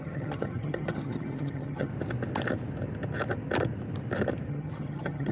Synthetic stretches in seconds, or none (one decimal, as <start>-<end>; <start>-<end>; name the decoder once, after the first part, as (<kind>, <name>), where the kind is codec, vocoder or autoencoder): 0.0-1.9 (vocoder, HiFi-GAN); 4.5-5.3